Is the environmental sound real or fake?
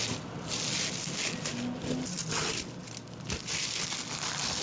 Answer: real